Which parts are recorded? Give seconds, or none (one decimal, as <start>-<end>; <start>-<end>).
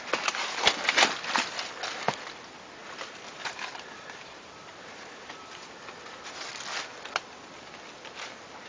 0.0-2.8; 6.5-8.7